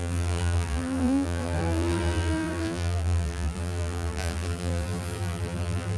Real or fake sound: fake